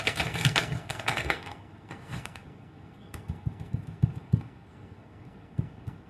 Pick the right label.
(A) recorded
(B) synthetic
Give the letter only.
B